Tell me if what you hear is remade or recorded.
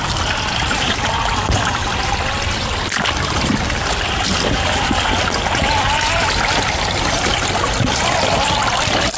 recorded